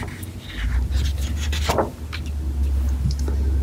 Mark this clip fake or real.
real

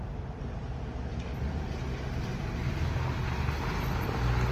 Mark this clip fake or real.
real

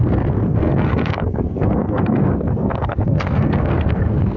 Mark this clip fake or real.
fake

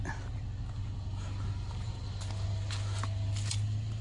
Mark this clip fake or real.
real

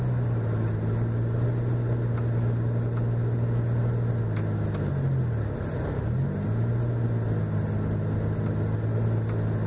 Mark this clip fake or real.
real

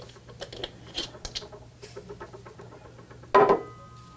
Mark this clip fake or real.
real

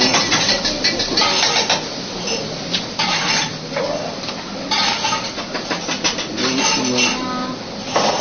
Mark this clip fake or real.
real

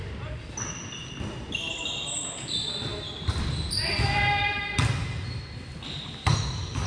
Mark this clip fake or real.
real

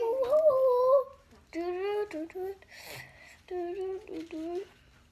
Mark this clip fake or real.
real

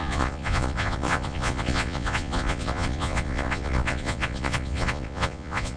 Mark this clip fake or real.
fake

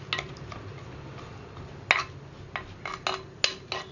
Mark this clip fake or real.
real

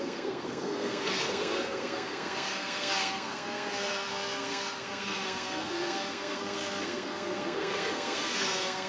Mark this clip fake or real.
fake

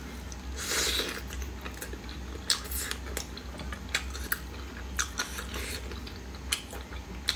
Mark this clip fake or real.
real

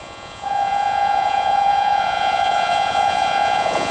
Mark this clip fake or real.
fake